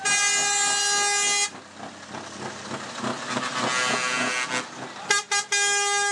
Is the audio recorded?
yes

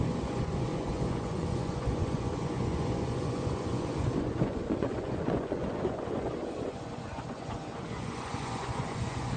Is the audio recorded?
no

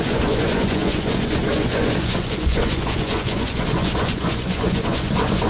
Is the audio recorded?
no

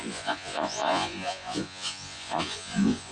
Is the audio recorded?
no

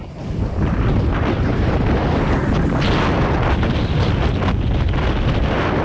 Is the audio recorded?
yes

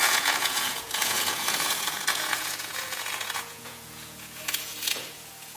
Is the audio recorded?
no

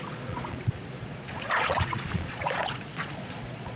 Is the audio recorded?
no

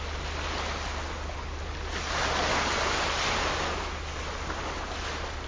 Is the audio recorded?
yes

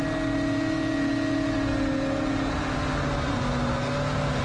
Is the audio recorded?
yes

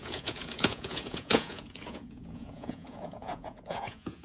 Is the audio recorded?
no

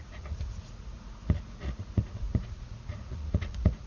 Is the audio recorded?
no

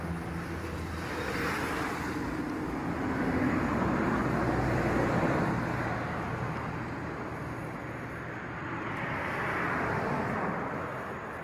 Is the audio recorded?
yes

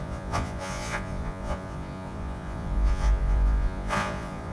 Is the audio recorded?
no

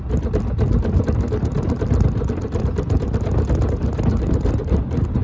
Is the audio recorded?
yes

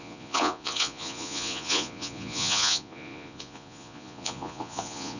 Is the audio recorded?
no